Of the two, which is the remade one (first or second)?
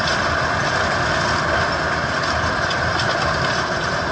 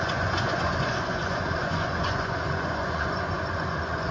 second